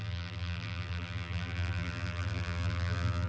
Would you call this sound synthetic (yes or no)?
yes